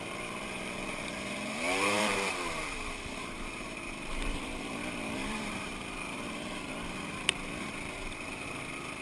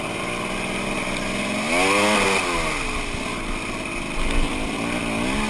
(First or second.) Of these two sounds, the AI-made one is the first